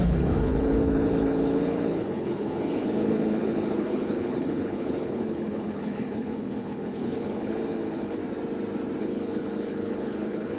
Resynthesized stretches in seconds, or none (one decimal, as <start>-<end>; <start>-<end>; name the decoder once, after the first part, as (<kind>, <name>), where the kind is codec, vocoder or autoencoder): 0.0-8.2 (codec, HILCodec); 9.0-10.6